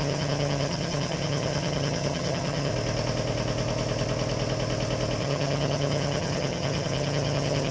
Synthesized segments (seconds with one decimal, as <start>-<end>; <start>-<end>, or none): 0.0-2.7; 5.2-7.7